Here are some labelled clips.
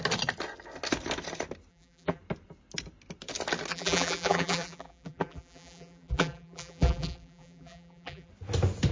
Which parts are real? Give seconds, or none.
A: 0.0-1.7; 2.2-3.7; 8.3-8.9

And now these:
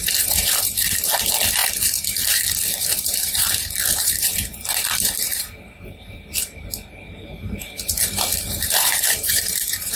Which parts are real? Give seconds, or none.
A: 1.6-2.8

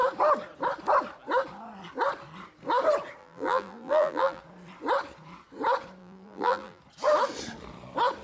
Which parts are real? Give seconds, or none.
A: 0.0-3.2; 4.4-6.0; 6.8-8.2

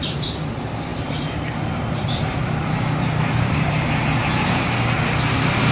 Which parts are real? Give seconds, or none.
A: 0.0-0.9; 4.3-5.7

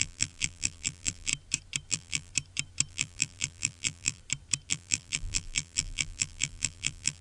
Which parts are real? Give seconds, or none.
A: 1.3-1.9; 2.3-2.9; 4.2-4.7

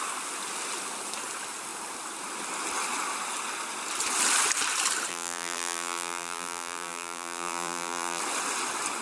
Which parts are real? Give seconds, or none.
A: 0.0-5.1; 8.2-9.0

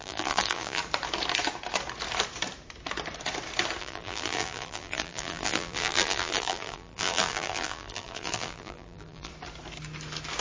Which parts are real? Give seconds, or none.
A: 0.8-3.8; 9.3-10.4